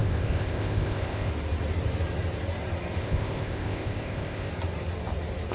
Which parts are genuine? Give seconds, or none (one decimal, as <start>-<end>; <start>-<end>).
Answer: 1.3-3.0; 4.5-5.5